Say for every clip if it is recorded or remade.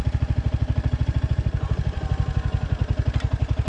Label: recorded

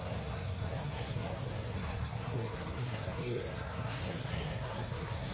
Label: remade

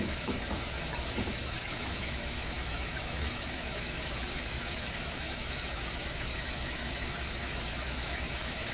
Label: remade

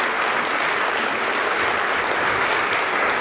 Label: recorded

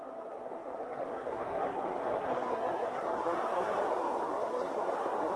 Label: remade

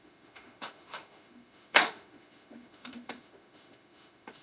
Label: remade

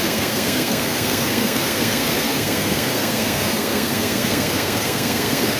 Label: remade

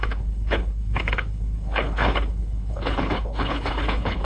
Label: remade